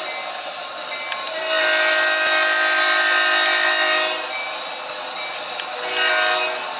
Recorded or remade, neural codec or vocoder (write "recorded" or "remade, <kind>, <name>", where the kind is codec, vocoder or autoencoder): recorded